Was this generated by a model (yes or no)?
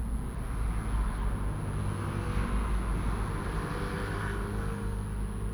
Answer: no